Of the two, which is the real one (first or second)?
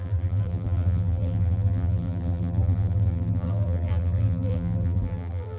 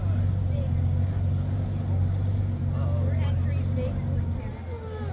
second